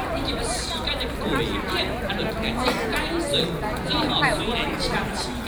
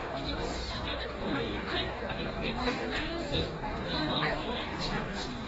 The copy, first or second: second